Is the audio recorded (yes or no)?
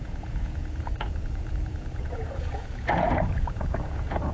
no